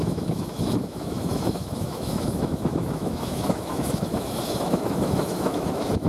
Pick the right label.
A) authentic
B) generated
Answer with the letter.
B